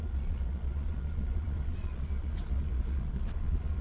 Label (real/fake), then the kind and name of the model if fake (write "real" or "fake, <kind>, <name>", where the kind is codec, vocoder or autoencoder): fake, vocoder, Vocos